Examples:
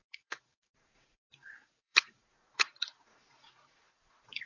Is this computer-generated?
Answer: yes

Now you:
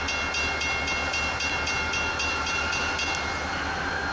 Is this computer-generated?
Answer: no